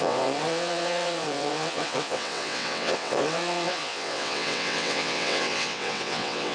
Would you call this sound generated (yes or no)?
yes